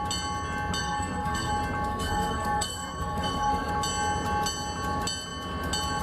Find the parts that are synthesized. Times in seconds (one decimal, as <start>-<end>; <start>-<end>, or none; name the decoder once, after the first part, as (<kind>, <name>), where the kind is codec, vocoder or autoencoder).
0.8-1.5 (codec, SNAC); 1.9-3.7